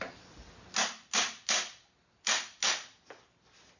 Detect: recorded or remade recorded